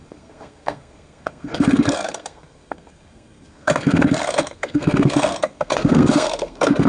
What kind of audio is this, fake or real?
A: fake